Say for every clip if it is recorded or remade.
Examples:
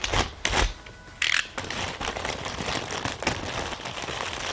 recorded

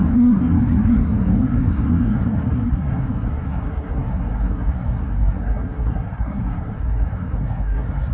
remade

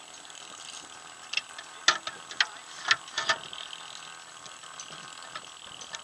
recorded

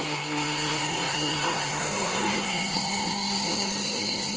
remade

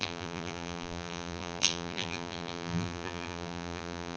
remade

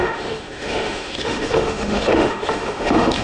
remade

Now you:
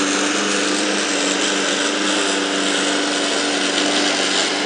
recorded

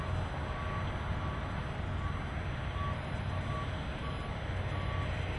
recorded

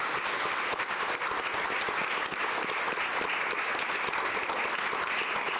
recorded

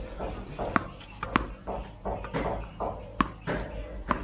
recorded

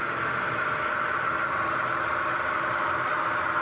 remade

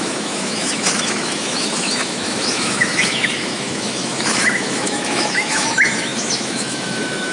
remade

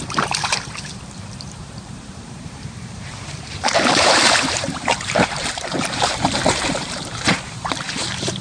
remade